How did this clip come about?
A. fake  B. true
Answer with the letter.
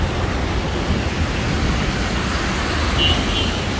B